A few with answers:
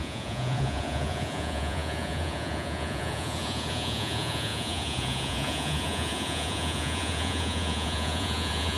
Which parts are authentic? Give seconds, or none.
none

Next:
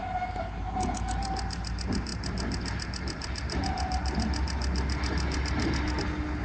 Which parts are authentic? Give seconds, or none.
0.0-6.4

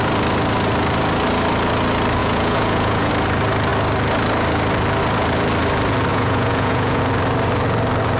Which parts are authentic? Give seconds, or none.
0.0-2.2; 3.1-6.1; 7.0-8.2

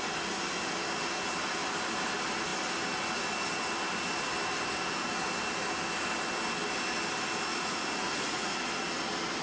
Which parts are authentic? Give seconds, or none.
0.0-7.5; 8.5-9.4

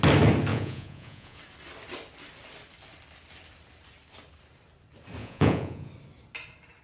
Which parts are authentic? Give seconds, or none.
0.0-0.5; 1.4-5.2; 5.9-6.8

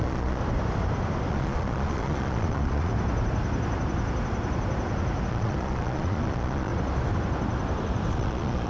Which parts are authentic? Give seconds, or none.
0.4-1.3; 2.9-5.3; 6.7-8.1

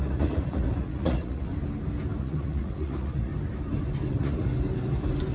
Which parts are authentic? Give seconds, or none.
1.5-2.2; 3.3-4.1; 4.5-5.3

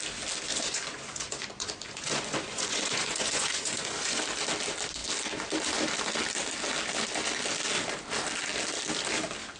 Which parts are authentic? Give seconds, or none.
0.0-0.5; 4.2-9.6